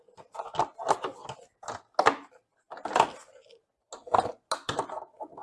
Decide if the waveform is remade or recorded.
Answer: recorded